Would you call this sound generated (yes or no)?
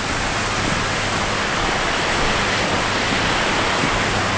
no